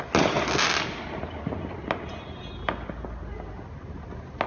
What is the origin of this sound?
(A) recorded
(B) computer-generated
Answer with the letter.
A